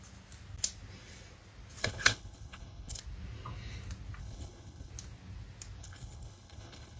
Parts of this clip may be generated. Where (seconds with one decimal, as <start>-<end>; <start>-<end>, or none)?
1.8-3.0; 4.2-4.9; 5.8-7.0